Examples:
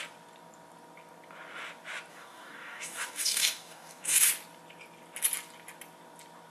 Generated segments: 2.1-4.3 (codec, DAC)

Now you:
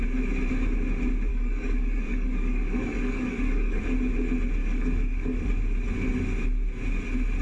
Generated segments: 1.3-3.8 (codec, DAC); 4.6-5.5

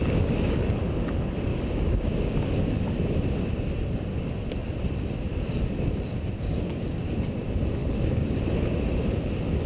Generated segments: 0.0-0.8 (codec, DAC); 1.5-2.5; 6.4-7.0; 7.8-8.4

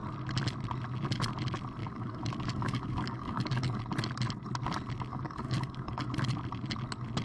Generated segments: 1.8-3.8 (codec, DAC); 5.1-6.0